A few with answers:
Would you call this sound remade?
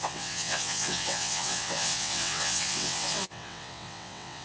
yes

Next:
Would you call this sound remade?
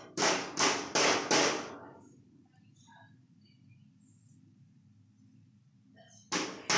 no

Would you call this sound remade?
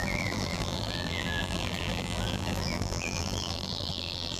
yes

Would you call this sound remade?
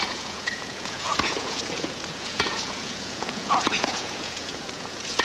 yes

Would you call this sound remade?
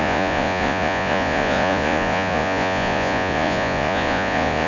yes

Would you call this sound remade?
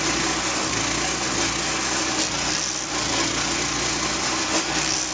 no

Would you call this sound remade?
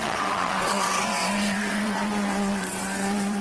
yes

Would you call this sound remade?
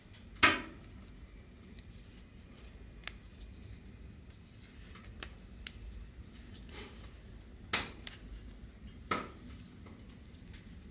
no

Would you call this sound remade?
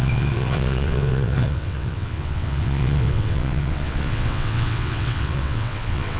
yes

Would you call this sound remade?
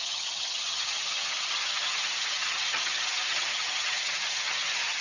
yes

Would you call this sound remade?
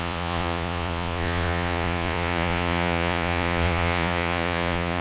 yes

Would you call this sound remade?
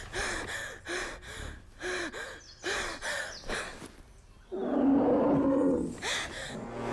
no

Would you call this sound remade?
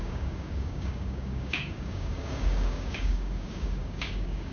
yes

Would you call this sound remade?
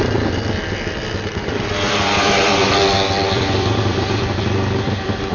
yes